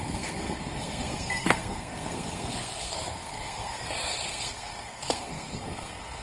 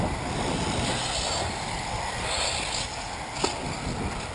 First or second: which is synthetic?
first